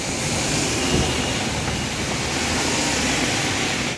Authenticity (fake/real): real